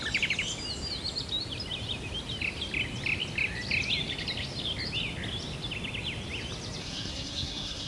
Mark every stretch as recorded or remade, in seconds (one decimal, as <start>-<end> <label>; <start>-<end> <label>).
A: 0.0-6.8 recorded; 6.8-7.9 remade